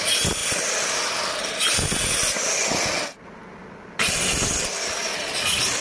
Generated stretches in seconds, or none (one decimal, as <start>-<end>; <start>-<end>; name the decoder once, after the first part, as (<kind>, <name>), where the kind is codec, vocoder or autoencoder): none